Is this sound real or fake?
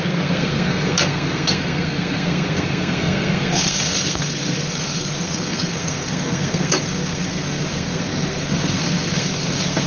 fake